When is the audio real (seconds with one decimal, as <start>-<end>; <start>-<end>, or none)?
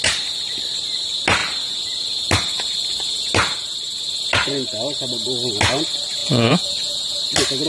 0.0-6.2; 7.2-7.7